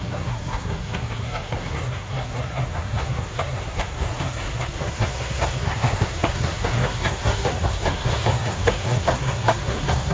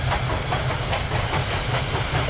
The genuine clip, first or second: second